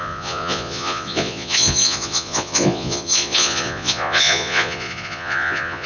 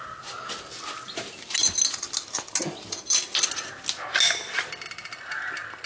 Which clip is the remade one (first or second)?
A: first